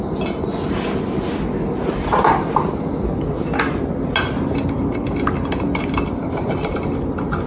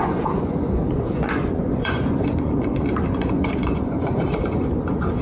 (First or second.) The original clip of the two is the first